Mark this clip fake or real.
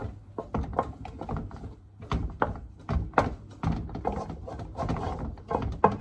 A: real